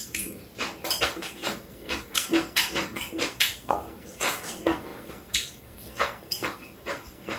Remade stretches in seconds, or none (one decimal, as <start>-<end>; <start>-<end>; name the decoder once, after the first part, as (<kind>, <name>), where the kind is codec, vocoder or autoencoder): 0.0-0.4 (codec, SNAC); 1.0-7.4